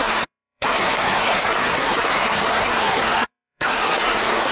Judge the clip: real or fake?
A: fake